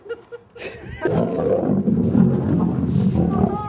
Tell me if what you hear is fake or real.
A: real